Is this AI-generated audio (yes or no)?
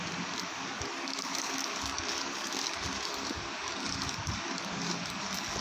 yes